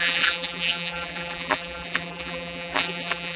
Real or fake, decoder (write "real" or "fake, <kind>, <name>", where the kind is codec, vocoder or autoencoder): fake, vocoder, BigVGAN v2